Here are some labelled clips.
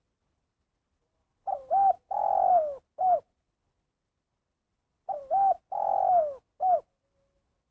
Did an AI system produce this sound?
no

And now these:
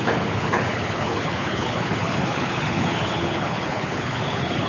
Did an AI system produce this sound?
yes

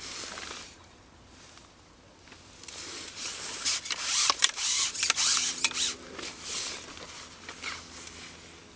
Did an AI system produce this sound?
no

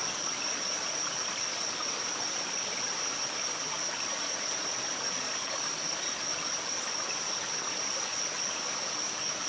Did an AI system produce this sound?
no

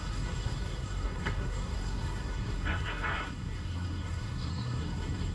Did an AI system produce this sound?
yes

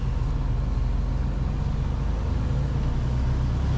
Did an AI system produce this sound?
no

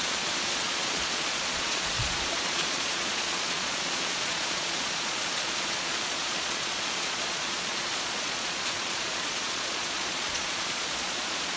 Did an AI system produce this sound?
yes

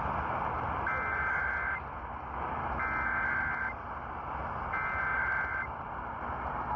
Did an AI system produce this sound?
no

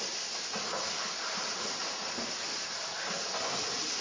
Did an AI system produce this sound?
yes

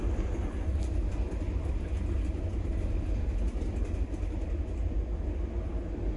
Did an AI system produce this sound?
no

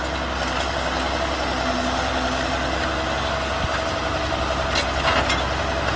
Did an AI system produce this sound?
no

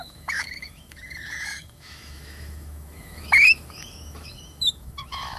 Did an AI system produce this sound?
yes